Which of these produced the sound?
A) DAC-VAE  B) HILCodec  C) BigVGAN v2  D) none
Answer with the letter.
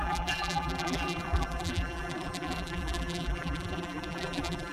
C